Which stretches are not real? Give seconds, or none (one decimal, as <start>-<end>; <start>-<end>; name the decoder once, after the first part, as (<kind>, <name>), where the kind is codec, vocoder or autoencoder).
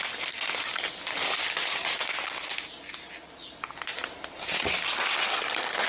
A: 3.4-5.4 (vocoder, BigVGAN v2)